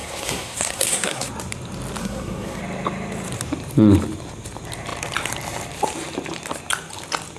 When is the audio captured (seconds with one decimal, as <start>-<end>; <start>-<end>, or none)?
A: 1.3-2.0; 2.6-7.4